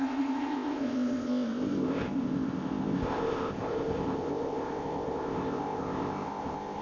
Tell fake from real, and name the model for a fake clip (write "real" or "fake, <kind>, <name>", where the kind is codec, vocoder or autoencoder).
fake, codec, ZipCodec